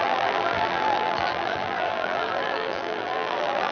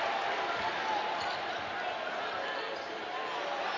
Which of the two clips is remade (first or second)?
first